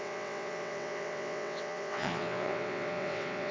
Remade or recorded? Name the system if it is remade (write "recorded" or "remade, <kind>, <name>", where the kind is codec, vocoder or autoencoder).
remade, vocoder, WaveNeXt